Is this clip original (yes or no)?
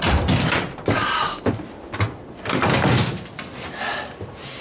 yes